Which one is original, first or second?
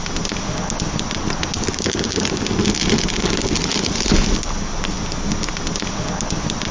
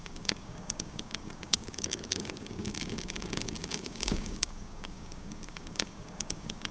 first